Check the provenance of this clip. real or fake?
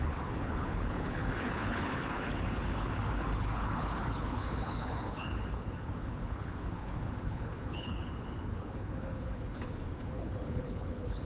fake